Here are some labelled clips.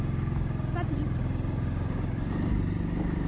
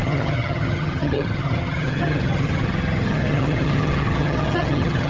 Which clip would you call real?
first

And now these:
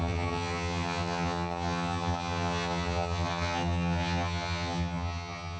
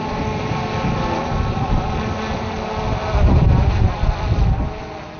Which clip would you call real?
second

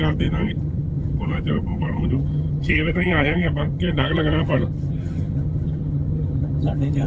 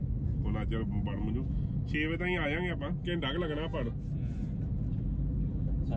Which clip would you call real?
second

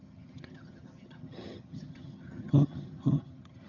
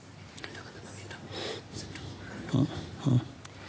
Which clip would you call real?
second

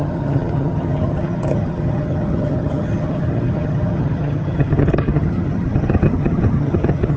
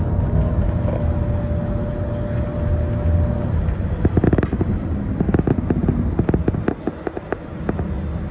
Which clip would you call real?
second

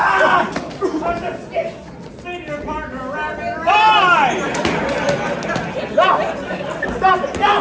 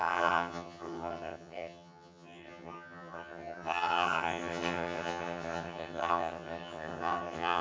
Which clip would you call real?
first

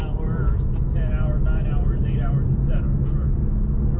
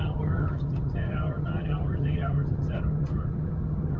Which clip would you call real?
first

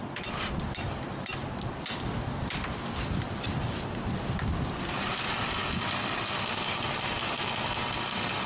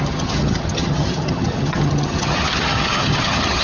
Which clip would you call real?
first